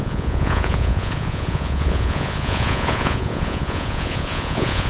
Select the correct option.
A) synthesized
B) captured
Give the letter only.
A